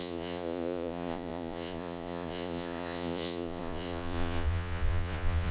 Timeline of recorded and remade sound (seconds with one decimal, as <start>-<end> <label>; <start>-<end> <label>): 0.0-5.5 remade